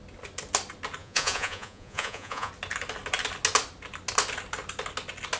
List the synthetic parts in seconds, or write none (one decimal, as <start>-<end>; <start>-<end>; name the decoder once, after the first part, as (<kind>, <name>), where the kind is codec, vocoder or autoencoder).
1.0-2.5 (vocoder, Vocos)